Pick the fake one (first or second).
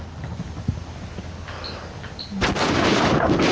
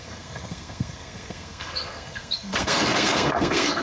second